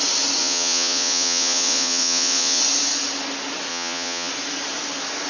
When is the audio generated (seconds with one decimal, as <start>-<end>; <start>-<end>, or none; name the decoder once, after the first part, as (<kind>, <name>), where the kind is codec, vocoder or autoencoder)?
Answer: 0.4-2.6 (vocoder, Vocos); 3.7-4.3